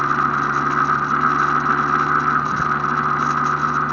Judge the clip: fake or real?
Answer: real